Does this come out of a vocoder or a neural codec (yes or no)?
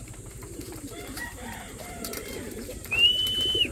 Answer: yes